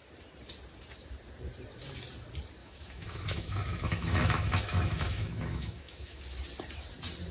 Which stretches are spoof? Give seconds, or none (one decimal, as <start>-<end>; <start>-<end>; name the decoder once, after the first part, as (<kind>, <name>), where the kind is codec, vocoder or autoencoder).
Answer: 2.6-6.2 (autoencoder, DAC-VAE)